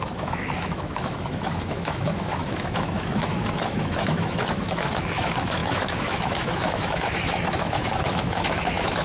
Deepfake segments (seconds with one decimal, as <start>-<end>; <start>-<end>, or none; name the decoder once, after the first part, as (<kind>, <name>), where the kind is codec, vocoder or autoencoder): 0.0-9.0 (autoencoder, DAC-VAE)